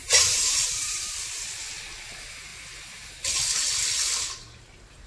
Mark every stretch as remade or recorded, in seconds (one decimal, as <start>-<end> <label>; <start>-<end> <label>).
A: 0.0-1.0 remade; 1.0-2.5 recorded; 2.5-3.1 remade; 3.1-5.1 recorded